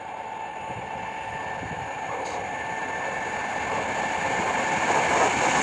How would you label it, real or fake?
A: real